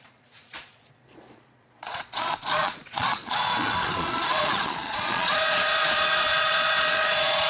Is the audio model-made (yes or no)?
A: yes